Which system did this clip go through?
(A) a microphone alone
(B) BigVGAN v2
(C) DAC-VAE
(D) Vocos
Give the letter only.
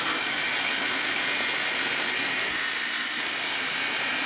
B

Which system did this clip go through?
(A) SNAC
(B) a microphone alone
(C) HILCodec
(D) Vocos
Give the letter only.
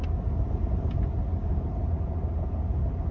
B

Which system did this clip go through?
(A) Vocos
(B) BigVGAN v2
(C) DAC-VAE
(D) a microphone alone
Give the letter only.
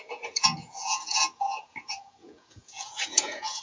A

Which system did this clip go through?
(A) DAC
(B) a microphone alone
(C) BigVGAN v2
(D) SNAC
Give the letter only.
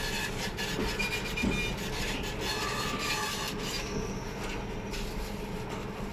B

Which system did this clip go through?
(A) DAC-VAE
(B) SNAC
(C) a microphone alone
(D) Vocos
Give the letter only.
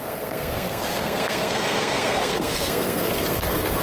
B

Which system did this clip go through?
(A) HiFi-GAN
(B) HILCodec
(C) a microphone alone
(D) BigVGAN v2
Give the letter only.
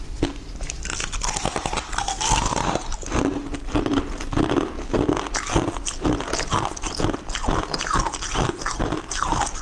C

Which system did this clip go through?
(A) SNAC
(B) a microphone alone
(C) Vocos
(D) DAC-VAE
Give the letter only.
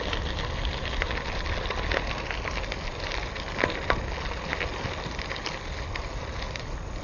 B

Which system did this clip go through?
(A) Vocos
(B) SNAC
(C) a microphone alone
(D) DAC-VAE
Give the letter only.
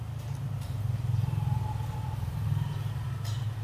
C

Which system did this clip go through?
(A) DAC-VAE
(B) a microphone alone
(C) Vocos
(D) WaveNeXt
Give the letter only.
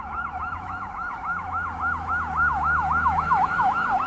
A